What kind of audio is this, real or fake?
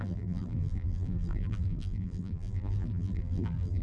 fake